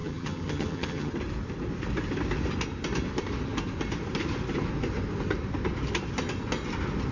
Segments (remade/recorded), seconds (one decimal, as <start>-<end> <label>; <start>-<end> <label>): 0.0-1.1 remade; 1.1-7.1 recorded